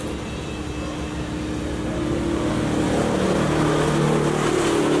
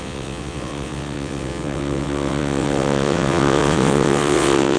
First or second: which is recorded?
first